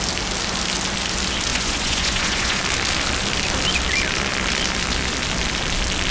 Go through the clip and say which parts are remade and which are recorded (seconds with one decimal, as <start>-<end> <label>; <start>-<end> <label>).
0.0-1.5 recorded; 1.5-2.6 remade; 2.6-6.1 recorded